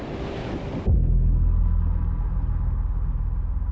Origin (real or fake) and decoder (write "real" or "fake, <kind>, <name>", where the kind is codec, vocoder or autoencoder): real